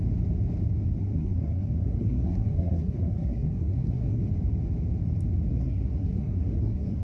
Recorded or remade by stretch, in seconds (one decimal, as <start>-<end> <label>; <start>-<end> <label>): 0.0-1.0 recorded; 1.0-4.2 remade; 4.2-5.5 recorded; 5.5-7.0 remade